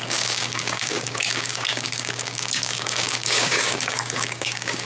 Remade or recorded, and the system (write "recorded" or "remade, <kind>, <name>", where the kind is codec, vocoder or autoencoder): remade, codec, DAC